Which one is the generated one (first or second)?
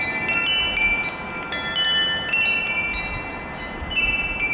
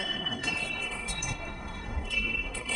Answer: second